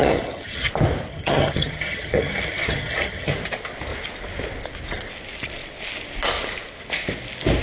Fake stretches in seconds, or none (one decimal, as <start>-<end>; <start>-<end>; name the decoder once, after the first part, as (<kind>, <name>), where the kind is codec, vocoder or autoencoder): 0.0-0.7 (vocoder, HiFi-GAN); 1.1-3.3